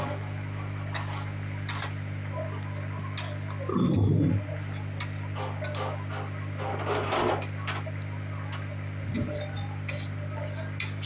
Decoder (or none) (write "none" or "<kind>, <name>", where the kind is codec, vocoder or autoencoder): none